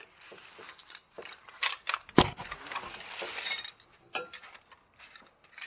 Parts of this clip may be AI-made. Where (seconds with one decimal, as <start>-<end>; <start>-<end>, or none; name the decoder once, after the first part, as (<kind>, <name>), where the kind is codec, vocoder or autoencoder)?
none